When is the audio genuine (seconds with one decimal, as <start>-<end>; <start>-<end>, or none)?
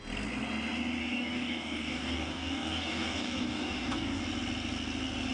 0.0-1.0; 4.2-5.3